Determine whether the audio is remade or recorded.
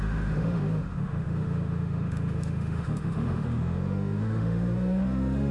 remade